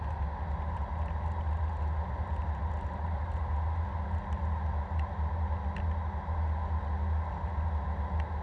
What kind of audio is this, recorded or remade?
recorded